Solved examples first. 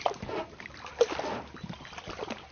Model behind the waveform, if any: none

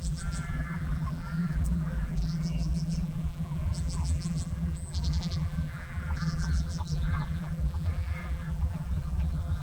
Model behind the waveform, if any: vocoder, BigVGAN v2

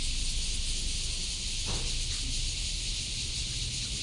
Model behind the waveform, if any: none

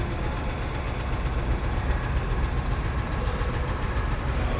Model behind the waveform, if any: vocoder, BigVGAN v2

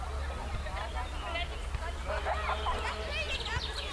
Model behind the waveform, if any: none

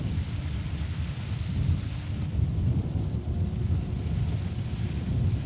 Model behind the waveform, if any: none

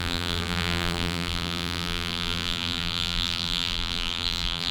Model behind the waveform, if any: vocoder, BigVGAN v2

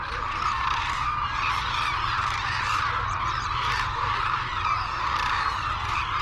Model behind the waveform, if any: vocoder, BigVGAN v2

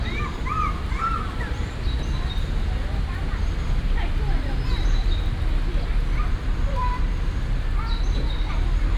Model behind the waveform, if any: vocoder, BigVGAN v2